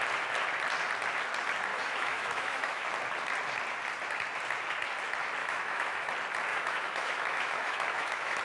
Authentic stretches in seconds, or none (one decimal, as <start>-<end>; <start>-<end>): 0.0-1.7; 2.9-5.4; 6.1-6.5